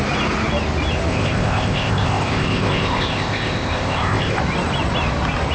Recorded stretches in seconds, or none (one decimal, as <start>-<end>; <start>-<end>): 0.0-1.1; 4.4-5.5